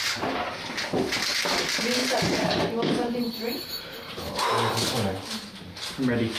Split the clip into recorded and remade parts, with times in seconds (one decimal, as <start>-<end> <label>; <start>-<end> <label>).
0.0-2.0 recorded; 2.0-4.5 remade; 4.5-6.4 recorded